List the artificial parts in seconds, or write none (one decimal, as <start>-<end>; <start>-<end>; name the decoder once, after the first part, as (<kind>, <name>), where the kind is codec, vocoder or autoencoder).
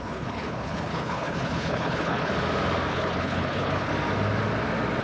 0.0-2.3 (codec, HILCodec); 2.9-3.9